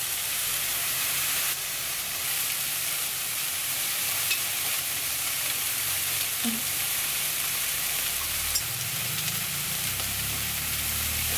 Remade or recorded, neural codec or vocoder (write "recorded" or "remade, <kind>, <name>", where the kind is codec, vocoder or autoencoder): remade, vocoder, BigVGAN v2